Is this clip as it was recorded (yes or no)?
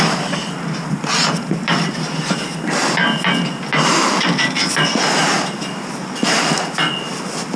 yes